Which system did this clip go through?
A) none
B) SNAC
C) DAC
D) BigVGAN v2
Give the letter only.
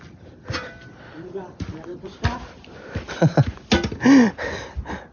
A